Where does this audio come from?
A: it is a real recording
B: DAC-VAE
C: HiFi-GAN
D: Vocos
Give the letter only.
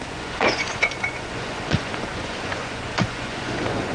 D